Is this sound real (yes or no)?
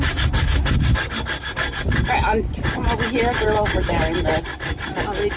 yes